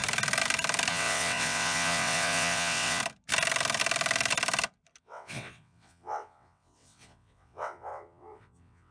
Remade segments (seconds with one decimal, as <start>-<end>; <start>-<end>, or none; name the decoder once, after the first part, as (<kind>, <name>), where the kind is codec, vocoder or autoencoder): 0.9-3.0 (vocoder, WaveNeXt); 5.0-8.9